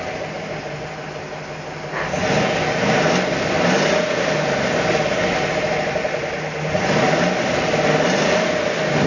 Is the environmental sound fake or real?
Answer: real